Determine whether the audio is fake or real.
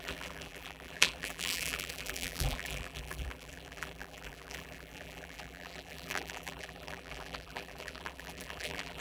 fake